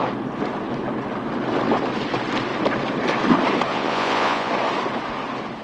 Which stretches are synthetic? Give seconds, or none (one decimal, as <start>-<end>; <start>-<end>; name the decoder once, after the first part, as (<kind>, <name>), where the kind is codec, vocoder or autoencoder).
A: 3.7-4.5 (vocoder, Vocos)